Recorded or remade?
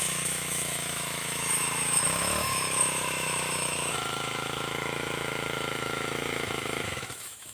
remade